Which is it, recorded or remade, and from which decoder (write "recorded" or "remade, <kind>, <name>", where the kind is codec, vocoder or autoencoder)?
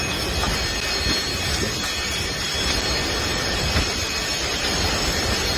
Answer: recorded